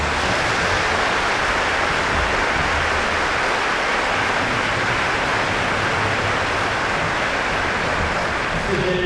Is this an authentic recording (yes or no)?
yes